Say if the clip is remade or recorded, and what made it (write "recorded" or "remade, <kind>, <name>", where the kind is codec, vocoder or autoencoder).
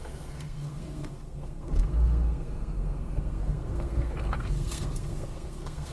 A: remade, codec, SNAC